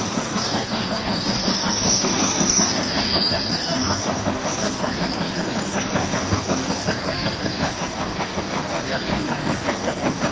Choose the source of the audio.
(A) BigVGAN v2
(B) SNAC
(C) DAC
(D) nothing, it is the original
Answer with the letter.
C